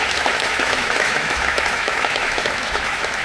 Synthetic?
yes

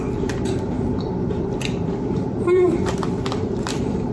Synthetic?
yes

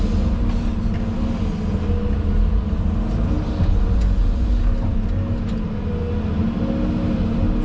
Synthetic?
no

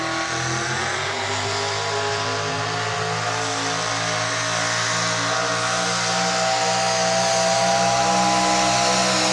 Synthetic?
no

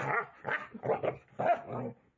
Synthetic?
no